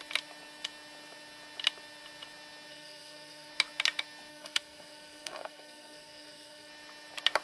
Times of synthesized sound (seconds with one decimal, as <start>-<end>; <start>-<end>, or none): 2.7-3.5; 4.3-6.7